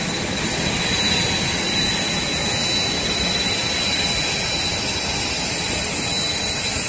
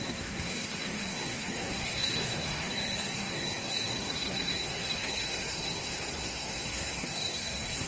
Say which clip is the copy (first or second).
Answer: second